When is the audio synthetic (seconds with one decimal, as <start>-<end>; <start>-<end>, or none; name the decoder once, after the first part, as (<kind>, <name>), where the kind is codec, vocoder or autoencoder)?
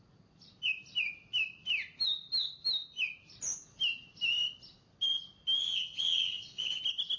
5.6-6.8 (vocoder, WaveNeXt)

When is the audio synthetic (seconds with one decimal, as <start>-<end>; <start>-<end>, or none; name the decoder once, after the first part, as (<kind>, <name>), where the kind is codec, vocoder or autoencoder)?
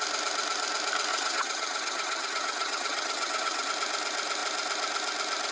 1.1-3.7 (vocoder, HiFi-GAN)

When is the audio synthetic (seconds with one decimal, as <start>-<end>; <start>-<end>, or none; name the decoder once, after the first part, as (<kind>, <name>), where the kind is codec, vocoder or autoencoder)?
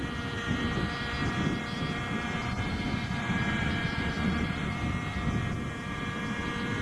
2.4-4.7 (vocoder, Vocos)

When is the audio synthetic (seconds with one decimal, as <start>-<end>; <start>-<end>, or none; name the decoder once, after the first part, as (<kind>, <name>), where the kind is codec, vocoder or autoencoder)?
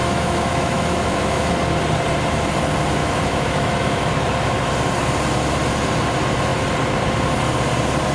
0.0-1.5 (autoencoder, DAC-VAE); 3.0-4.1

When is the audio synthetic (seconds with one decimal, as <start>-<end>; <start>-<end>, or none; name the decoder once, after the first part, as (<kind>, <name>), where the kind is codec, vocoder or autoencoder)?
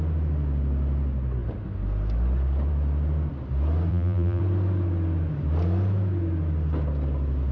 3.9-4.4 (vocoder, BigVGAN v2)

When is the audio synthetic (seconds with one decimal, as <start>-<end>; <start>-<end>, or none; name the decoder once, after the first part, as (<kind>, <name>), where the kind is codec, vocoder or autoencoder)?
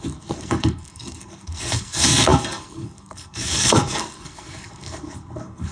0.0-5.7 (codec, SNAC)